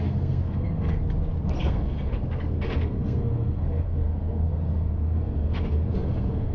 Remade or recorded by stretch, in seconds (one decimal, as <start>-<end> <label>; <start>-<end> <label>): 0.0-1.0 remade; 1.0-1.6 recorded; 1.6-6.5 remade